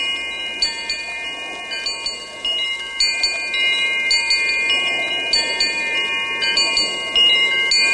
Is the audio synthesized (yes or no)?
no